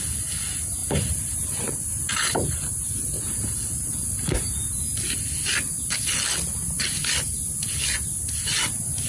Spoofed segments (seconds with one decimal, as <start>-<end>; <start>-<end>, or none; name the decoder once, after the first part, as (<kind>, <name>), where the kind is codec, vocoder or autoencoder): 0.8-5.5 (vocoder, BigVGAN v2)